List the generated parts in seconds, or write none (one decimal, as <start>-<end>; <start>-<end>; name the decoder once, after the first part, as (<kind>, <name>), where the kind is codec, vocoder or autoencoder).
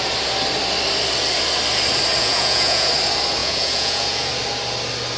2.2-2.9 (vocoder, Vocos); 3.4-4.3